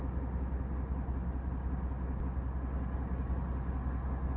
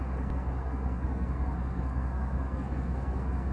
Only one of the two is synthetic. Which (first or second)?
second